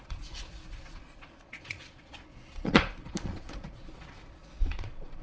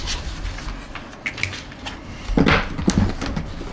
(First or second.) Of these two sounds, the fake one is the first